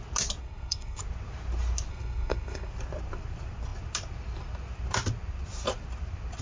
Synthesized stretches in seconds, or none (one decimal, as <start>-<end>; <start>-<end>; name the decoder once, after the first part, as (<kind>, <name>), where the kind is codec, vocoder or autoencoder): 0.4-1.0 (codec, SNAC); 1.9-2.7

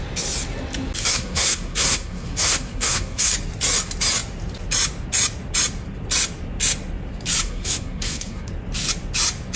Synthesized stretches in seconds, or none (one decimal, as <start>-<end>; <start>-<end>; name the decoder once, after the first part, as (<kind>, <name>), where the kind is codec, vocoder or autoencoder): 1.1-3.3 (codec, SNAC); 7.4-8.5

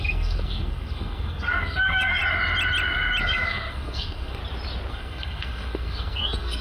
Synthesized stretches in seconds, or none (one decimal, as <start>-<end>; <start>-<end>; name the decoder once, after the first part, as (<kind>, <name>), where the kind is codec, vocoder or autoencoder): 0.0-2.2 (codec, SNAC); 3.2-4.4; 4.9-6.6

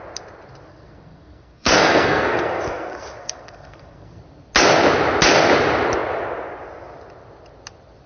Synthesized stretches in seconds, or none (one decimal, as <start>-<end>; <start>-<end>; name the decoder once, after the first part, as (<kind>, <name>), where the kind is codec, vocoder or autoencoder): 0.7-4.2 (codec, SNAC)

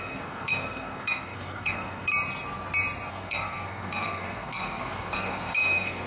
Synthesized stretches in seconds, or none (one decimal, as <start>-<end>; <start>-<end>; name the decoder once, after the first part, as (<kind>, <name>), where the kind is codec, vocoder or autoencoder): 0.0-2.1 (codec, SNAC); 3.1-6.1

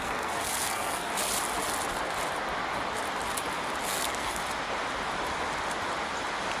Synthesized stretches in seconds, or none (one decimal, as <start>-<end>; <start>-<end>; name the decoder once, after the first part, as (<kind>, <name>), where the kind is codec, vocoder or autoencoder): 0.0-1.1 (codec, SNAC); 3.9-4.4

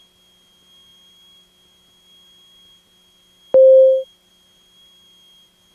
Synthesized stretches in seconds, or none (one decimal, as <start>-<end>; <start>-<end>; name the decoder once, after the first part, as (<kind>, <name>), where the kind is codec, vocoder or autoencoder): none

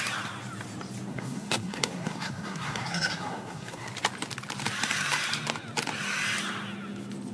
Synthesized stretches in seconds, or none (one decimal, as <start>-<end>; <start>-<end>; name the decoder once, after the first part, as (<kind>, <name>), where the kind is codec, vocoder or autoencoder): 1.1-3.9 (codec, SNAC)